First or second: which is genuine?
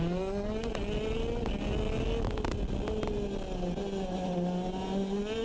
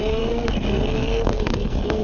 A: first